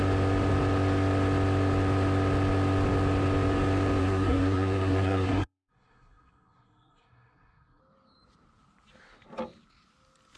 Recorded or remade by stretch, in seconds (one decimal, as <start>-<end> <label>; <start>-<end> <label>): 0.0-4.0 recorded; 4.0-7.8 remade; 7.8-10.4 recorded